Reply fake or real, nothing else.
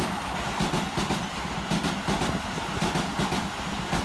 real